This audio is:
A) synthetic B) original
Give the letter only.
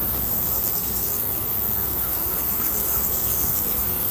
A